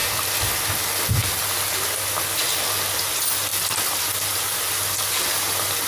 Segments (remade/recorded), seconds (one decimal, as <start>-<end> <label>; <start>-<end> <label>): 0.0-5.9 recorded